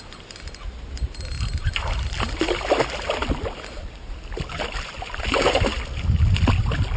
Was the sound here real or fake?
real